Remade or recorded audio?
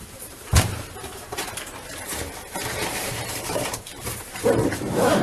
remade